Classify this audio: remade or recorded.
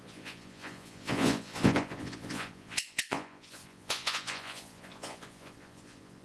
remade